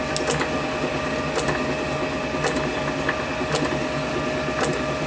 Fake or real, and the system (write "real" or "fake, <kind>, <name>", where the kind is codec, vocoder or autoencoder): real